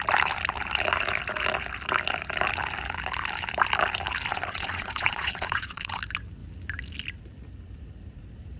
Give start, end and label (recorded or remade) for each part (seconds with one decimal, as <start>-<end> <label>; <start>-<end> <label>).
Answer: 0.0-4.3 recorded; 4.3-6.0 remade; 6.0-8.6 recorded